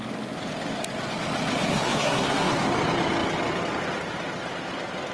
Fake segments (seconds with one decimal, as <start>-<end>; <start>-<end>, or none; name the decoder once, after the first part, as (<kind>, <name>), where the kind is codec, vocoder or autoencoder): 1.7-2.5 (codec, SNAC)